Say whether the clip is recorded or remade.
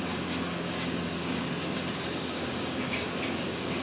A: remade